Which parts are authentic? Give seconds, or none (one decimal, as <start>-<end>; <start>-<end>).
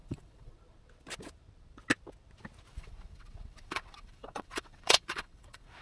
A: 0.5-2.7